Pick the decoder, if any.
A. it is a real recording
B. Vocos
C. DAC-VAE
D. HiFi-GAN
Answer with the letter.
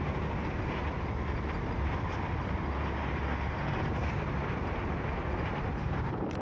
A